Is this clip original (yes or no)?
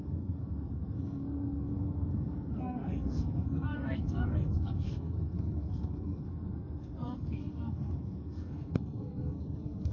no